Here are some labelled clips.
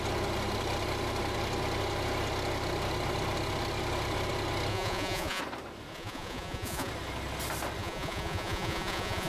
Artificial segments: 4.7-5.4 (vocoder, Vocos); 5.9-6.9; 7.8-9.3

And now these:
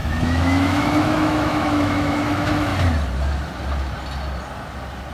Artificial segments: 0.0-2.7 (autoencoder, DAC-VAE)

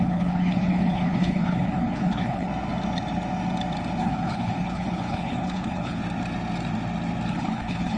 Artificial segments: 0.0-2.5 (codec, HILCodec); 4.0-6.0; 7.3-8.0